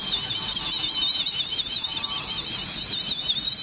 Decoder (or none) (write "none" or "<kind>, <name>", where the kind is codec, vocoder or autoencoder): vocoder, BigVGAN v2